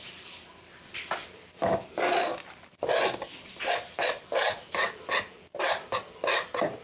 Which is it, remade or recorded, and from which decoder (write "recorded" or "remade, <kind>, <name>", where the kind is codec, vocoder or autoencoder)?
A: recorded